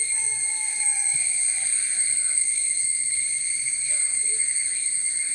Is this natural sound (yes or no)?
no